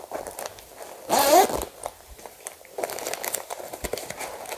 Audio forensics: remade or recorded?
recorded